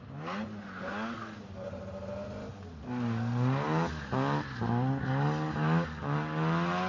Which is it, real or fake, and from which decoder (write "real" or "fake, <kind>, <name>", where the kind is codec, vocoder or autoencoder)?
real